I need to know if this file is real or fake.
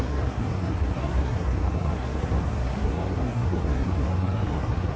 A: fake